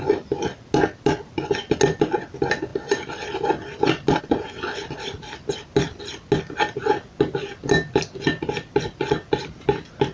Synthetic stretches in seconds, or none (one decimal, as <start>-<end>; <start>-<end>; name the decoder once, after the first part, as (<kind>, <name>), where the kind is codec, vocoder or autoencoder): none